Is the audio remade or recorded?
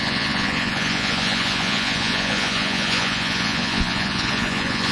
remade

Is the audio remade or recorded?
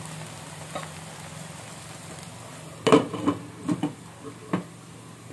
recorded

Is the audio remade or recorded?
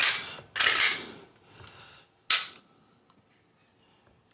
recorded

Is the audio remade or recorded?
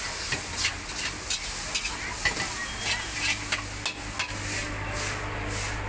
recorded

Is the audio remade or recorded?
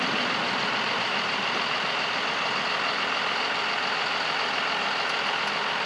recorded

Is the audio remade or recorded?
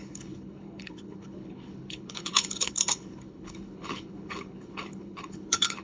remade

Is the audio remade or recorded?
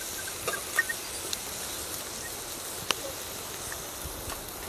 recorded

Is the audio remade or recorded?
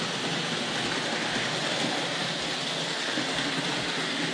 recorded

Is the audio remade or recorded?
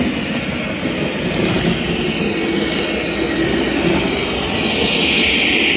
recorded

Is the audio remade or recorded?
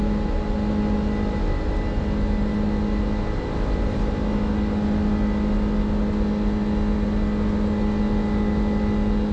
recorded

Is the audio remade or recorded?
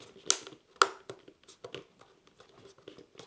recorded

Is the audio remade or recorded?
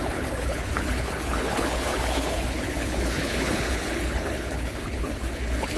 remade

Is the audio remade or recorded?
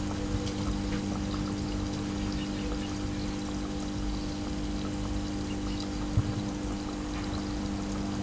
recorded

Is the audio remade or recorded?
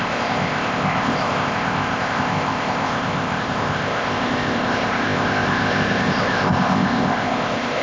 remade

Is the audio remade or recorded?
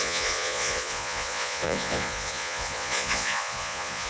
remade